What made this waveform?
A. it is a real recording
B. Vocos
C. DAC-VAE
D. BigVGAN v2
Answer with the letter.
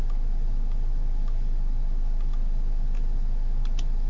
A